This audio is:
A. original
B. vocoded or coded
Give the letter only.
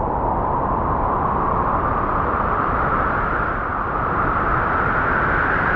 A